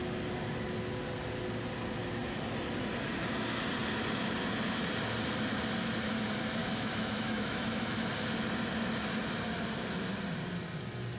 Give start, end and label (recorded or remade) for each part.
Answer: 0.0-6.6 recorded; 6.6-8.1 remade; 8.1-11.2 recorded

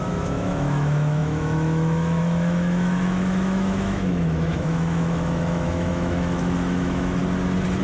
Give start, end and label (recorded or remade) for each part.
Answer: 0.0-7.2 remade; 7.2-7.8 recorded